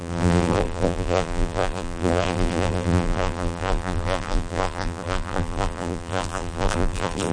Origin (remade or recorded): remade